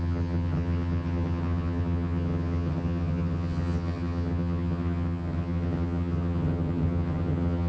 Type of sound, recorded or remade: remade